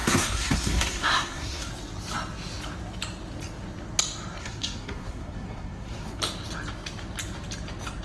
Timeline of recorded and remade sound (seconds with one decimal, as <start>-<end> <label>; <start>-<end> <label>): 0.0-1.7 remade; 1.7-4.4 recorded; 4.4-6.2 remade; 6.2-8.0 recorded